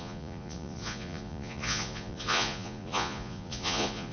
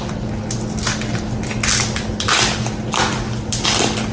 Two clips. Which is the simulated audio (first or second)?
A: first